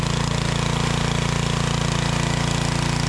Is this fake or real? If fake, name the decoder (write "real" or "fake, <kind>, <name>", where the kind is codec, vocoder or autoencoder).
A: real